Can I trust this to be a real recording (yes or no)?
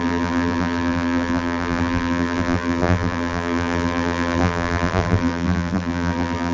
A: no